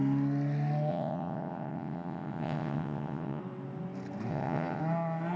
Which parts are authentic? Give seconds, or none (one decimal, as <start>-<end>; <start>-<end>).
0.0-0.9; 3.4-4.3; 4.8-5.4